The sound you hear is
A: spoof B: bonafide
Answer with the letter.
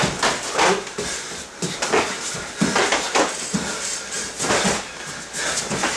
B